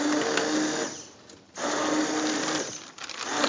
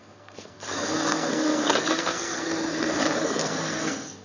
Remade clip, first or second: second